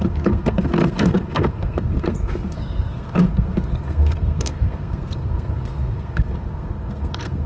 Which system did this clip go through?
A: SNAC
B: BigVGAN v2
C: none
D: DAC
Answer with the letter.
A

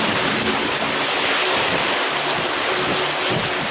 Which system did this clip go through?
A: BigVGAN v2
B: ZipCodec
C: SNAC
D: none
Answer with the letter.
D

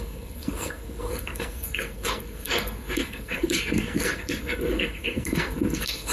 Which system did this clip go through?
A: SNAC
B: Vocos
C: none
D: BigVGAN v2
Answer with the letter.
A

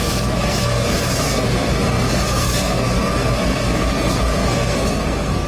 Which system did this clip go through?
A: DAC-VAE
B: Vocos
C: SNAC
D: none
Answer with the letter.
C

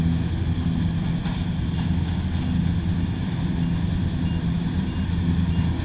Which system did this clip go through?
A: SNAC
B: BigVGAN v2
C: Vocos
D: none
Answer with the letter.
D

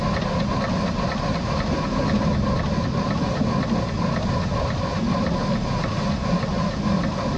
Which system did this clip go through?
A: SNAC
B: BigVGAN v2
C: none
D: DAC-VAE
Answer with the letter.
C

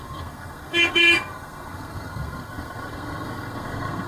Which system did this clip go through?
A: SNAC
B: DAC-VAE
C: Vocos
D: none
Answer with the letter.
A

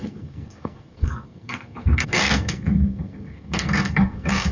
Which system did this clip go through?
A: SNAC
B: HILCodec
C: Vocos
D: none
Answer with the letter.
A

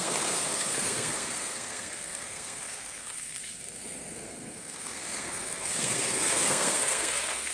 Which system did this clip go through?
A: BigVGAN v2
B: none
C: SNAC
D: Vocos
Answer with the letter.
C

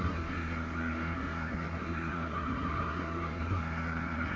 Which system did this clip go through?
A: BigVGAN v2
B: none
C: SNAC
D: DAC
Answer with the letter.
C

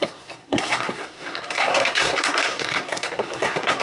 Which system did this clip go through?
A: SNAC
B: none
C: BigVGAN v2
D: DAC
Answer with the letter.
A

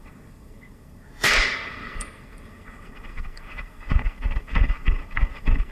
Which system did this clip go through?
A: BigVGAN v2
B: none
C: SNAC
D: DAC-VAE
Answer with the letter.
C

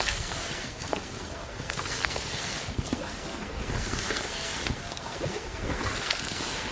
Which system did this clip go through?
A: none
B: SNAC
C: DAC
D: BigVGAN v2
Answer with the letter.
B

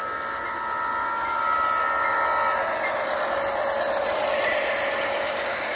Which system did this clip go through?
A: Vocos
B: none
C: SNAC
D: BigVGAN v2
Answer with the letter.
B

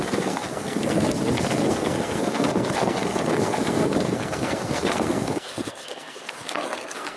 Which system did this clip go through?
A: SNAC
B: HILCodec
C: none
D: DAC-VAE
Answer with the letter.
A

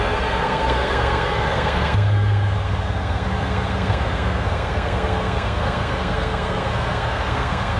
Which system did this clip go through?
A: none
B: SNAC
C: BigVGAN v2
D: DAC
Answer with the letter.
B